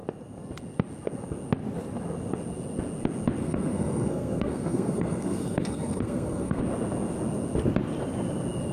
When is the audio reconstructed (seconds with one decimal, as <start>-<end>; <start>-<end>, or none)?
3.4-6.6